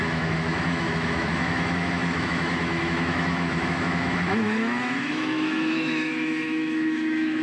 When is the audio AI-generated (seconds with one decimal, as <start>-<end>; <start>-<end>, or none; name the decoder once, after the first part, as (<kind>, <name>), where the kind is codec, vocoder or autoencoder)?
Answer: 0.0-7.4 (autoencoder, DAC-VAE)